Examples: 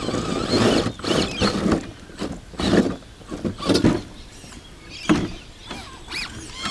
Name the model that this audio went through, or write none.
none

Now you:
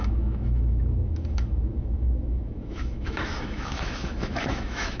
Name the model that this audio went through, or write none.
autoencoder, DAC-VAE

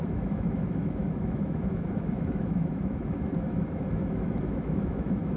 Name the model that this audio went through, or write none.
autoencoder, DAC-VAE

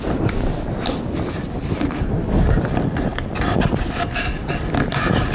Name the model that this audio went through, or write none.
none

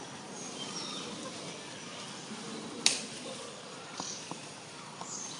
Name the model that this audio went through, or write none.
none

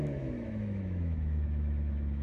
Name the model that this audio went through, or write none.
autoencoder, DAC-VAE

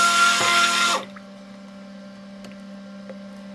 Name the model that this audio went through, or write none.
none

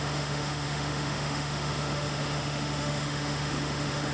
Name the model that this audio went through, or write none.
autoencoder, DAC-VAE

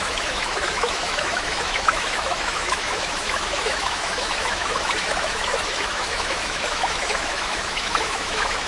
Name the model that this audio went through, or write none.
autoencoder, DAC-VAE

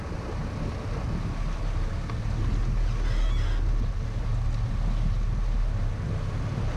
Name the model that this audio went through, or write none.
none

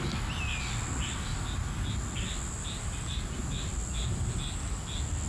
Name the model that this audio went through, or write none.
none